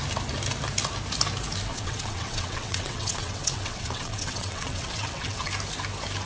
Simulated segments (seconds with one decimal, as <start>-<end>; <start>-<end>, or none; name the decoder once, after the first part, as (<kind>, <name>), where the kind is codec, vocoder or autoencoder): 1.7-5.5 (vocoder, WaveNeXt)